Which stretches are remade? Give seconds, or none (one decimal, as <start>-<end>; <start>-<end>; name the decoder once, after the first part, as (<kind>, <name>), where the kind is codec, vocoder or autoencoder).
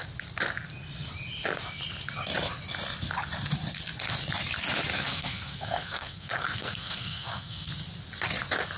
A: 4.9-7.7 (codec, SNAC)